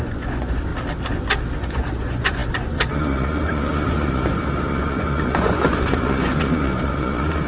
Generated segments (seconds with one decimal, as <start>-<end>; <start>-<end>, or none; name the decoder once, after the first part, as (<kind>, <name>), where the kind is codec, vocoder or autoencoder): 0.0-0.7 (vocoder, Vocos); 1.6-7.5